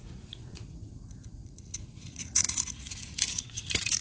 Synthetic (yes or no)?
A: yes